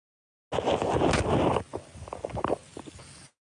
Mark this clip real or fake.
real